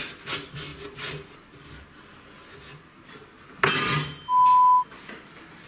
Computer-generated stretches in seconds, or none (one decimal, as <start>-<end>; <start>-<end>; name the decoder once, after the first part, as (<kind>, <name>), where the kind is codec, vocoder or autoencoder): none